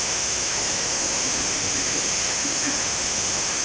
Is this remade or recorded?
remade